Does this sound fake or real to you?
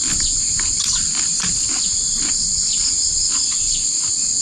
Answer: real